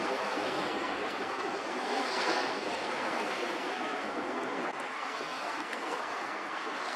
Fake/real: fake